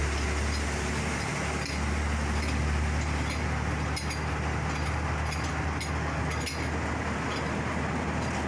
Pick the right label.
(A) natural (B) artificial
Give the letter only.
A